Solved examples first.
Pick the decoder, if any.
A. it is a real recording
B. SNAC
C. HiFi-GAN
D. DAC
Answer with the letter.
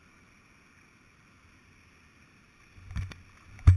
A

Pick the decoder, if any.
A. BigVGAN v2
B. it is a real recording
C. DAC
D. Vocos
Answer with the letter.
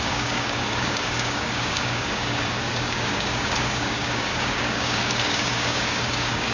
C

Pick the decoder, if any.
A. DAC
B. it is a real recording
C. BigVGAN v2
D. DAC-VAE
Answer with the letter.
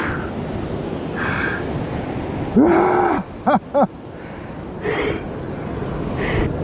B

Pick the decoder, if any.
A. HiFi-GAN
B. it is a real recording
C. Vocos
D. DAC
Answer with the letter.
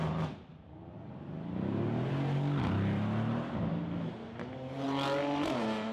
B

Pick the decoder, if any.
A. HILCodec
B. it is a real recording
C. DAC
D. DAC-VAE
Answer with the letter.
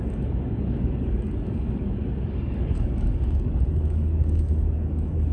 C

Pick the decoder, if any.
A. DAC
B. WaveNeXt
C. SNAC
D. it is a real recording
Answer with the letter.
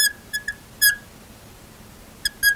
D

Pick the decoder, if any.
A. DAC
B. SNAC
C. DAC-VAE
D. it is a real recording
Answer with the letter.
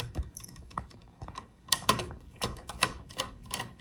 A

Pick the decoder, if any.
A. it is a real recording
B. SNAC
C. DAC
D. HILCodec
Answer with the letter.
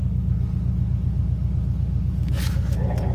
C